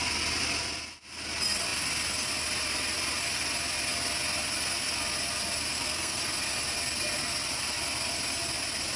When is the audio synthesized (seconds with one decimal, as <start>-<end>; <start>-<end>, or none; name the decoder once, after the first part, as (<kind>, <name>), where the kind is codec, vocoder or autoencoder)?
5.7-6.2 (codec, SNAC)